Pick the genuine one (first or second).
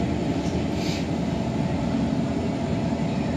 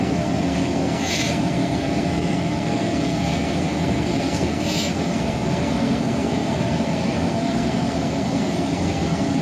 first